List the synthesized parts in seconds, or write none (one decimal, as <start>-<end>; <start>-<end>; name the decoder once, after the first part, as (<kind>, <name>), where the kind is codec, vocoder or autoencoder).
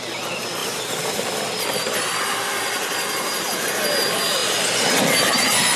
0.6-3.7 (vocoder, BigVGAN v2)